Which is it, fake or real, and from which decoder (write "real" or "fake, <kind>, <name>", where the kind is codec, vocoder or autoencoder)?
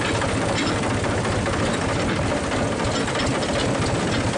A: real